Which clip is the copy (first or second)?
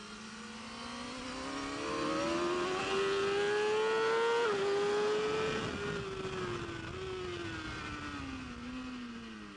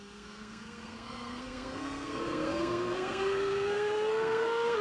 second